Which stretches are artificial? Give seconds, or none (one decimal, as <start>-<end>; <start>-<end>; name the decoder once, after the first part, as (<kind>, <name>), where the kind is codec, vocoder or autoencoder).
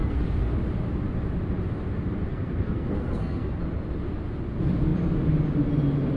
0.0-0.5 (codec, SNAC); 2.3-3.6